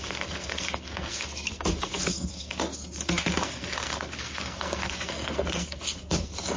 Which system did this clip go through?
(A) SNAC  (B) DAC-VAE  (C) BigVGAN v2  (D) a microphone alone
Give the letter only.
A